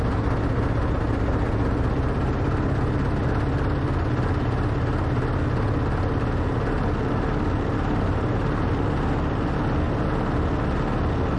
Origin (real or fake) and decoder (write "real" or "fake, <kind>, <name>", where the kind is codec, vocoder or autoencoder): real